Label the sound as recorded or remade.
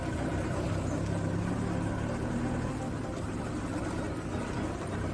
recorded